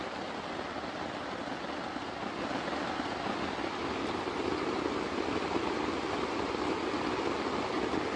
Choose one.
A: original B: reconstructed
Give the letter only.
A